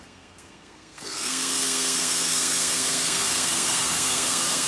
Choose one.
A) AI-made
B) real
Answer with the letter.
A